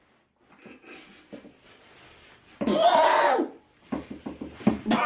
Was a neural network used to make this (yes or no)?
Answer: no